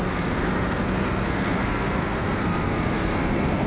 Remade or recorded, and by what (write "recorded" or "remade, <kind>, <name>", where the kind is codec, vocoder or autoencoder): remade, codec, SNAC